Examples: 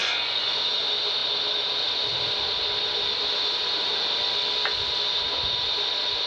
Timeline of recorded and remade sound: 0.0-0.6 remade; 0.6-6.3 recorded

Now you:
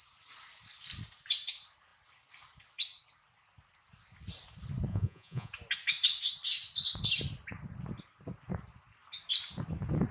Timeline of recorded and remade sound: 0.0-4.9 recorded; 4.9-5.5 remade; 5.5-10.1 recorded

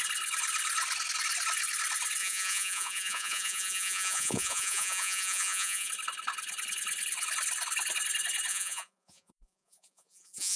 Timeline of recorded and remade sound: 0.0-2.2 recorded; 2.2-5.9 remade; 5.9-8.5 recorded; 8.5-10.6 remade